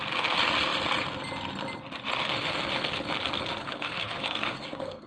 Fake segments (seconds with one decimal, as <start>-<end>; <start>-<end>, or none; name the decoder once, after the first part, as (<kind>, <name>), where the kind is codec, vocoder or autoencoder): 3.6-5.1 (codec, SNAC)

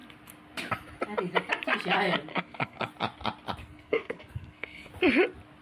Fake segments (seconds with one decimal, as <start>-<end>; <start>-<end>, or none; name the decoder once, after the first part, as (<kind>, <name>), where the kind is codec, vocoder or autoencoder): 2.3-2.9 (codec, SNAC); 3.6-4.9